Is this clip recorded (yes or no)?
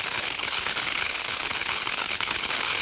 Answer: no